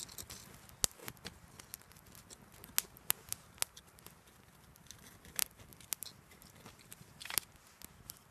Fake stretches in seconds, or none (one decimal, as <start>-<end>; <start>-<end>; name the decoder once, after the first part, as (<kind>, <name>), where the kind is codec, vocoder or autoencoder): none

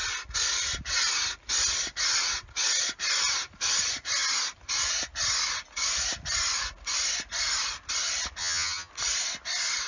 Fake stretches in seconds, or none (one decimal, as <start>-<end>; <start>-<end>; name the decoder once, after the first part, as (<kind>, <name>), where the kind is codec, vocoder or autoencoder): 8.4-8.9 (vocoder, HiFi-GAN)

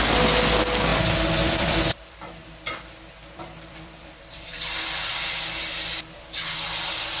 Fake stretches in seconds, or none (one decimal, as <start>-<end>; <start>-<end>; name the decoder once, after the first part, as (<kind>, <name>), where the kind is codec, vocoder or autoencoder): 0.9-5.0 (vocoder, BigVGAN v2)